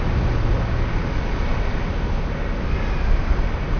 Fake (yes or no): no